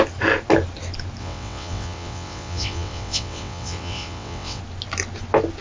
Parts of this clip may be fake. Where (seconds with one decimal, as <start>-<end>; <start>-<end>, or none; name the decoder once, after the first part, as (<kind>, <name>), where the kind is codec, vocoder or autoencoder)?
1.2-4.6 (vocoder, WaveNeXt)

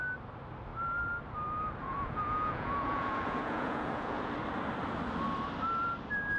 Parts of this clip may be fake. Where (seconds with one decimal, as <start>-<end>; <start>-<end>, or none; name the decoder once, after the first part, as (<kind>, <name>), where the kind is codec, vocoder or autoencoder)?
1.8-4.3 (vocoder, Vocos)

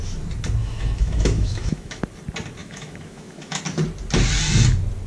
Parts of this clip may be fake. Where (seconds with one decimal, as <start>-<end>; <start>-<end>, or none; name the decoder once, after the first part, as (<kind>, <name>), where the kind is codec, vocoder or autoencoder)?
0.6-2.0 (autoencoder, DAC-VAE); 2.6-3.6